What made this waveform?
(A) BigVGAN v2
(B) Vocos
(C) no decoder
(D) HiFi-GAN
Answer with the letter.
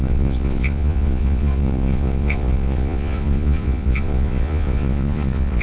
B